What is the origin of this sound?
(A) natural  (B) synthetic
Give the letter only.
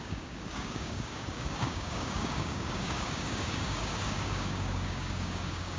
B